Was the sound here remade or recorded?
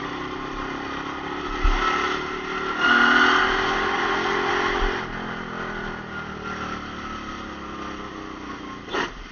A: recorded